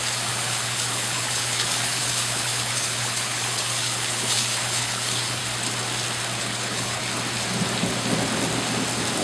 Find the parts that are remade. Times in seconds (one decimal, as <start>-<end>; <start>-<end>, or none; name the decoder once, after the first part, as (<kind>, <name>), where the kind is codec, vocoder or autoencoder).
0.0-5.4 (codec, HILCodec); 6.4-7.0